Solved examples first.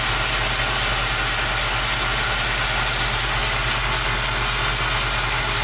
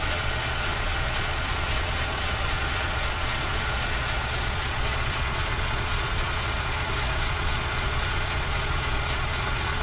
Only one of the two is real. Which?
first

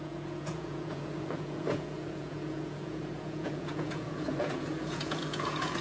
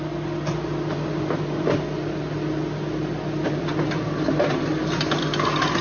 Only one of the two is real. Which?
second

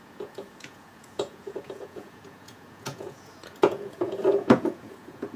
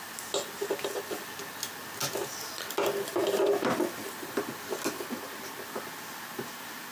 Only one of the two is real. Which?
second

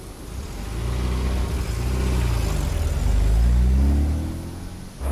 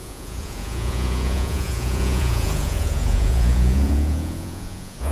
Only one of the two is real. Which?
first